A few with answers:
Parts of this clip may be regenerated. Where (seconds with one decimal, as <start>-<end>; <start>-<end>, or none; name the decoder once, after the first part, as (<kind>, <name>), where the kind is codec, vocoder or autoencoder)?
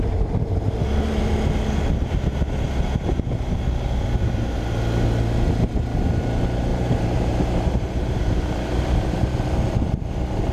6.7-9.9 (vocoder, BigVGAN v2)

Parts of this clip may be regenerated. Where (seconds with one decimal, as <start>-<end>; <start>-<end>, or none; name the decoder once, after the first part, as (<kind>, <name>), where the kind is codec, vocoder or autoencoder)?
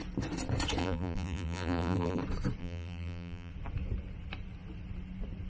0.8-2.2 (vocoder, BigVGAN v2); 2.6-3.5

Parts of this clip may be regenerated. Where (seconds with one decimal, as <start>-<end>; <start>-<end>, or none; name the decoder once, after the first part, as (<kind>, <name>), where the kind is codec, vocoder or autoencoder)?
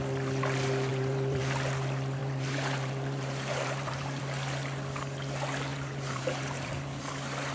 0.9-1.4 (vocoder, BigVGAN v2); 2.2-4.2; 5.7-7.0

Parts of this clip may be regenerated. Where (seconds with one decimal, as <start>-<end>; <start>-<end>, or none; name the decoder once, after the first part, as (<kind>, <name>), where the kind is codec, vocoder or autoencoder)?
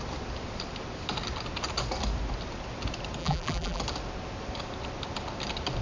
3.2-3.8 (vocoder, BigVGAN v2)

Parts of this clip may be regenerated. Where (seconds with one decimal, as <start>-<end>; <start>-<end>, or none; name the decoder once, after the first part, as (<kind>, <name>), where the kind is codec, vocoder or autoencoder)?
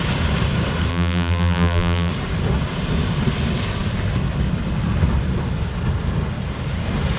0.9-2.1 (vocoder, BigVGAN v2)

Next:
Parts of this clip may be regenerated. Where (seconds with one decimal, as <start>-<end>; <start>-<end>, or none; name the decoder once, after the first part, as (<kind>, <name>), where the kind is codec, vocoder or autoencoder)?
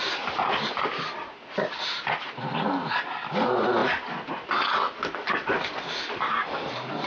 none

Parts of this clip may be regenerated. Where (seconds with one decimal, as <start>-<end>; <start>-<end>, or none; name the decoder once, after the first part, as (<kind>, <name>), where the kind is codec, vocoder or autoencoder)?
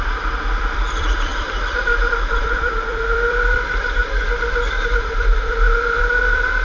0.0-4.0 (vocoder, BigVGAN v2); 4.8-6.6